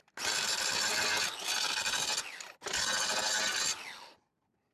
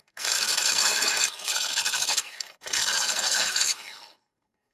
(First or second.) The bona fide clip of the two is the first